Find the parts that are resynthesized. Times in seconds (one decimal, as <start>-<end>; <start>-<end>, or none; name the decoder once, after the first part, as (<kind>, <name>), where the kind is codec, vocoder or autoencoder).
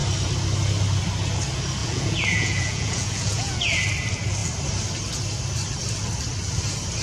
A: 1.8-3.8 (vocoder, Vocos)